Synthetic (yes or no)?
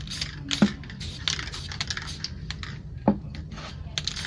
no